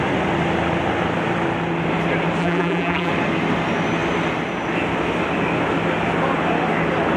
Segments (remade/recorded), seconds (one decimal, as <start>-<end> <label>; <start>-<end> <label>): 0.0-2.4 recorded; 2.4-3.1 remade; 3.1-7.2 recorded